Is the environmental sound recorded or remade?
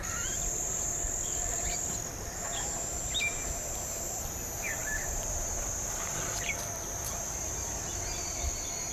remade